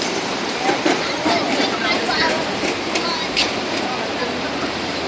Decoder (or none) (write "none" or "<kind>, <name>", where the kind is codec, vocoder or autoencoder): vocoder, BigVGAN v2